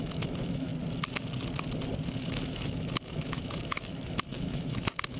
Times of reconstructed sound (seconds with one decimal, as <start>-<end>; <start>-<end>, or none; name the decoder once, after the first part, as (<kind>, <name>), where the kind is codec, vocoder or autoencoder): 0.0-0.7 (autoencoder, DAC-VAE); 2.1-5.2